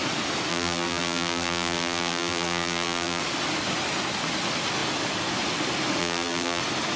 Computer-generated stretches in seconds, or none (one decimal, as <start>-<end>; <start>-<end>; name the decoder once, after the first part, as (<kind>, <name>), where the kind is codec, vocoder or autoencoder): 0.5-3.2 (vocoder, BigVGAN v2); 6.0-6.6